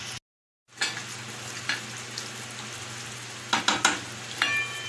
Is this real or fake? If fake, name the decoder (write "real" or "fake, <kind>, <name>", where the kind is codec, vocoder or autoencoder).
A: real